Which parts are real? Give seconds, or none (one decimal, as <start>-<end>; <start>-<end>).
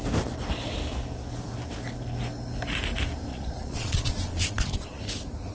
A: 0.0-3.3; 5.0-5.5